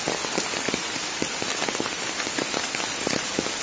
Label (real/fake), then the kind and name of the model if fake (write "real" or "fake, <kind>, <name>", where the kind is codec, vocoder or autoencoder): real